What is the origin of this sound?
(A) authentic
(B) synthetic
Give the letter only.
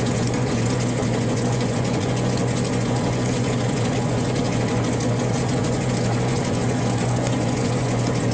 B